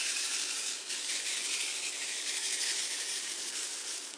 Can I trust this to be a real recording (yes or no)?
no